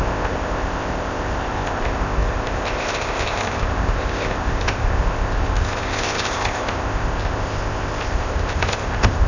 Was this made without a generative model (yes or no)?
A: no